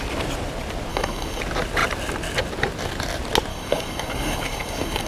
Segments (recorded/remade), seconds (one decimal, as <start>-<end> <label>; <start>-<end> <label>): 0.0-0.9 recorded; 0.9-1.4 remade; 1.4-3.5 recorded; 3.5-5.1 remade